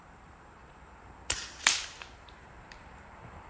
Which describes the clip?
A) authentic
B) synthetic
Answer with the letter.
B